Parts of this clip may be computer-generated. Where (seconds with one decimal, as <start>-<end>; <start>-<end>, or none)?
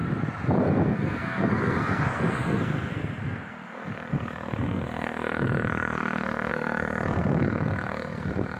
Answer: 0.6-8.6